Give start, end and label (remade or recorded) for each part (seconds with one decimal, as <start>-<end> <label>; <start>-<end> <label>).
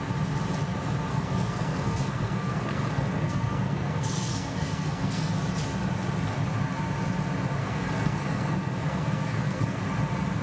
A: 0.0-1.1 recorded; 1.1-5.3 remade; 5.3-7.6 recorded; 7.6-9.8 remade; 9.8-10.4 recorded